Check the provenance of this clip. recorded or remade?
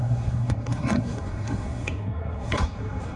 remade